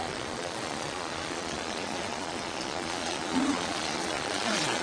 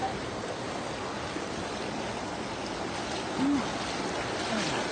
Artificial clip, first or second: first